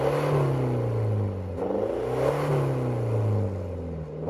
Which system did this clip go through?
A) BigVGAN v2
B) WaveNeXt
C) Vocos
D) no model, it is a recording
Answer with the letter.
D